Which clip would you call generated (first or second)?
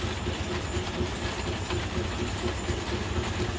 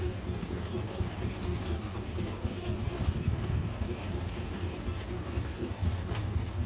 second